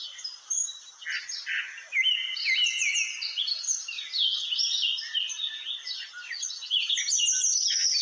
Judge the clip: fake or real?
real